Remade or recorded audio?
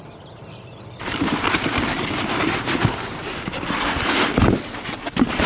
recorded